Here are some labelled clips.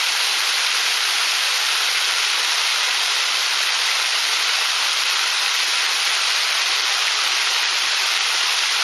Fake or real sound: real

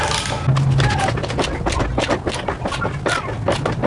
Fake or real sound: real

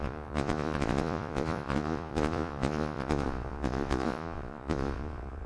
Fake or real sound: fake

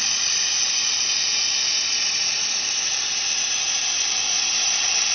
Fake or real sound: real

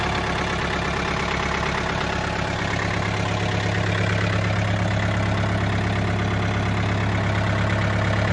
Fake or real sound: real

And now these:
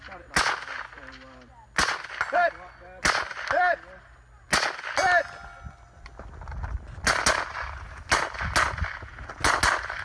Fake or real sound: real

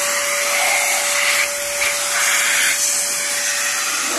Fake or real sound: real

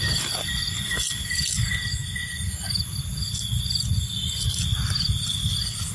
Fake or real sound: real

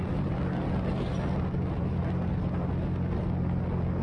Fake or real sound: real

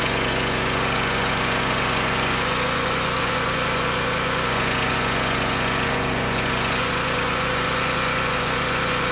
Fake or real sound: fake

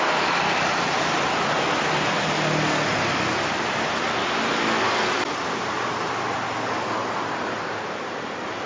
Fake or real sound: real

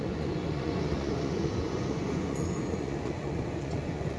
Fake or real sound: fake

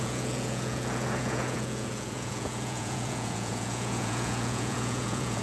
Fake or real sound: fake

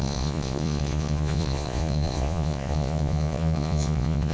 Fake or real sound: fake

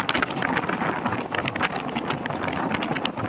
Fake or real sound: real